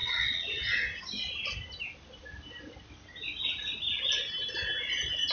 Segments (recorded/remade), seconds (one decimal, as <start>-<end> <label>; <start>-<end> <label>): 0.0-1.0 remade; 1.0-5.3 recorded